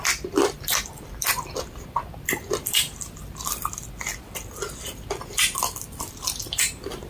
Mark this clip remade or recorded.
remade